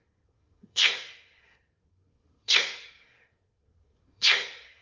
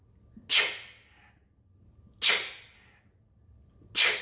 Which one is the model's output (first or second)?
first